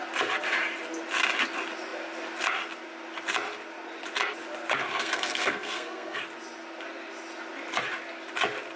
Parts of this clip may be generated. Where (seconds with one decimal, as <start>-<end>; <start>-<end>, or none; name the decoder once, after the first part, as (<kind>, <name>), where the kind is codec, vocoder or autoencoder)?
4.8-6.2 (codec, SNAC)